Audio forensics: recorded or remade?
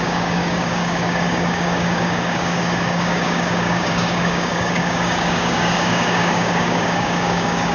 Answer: remade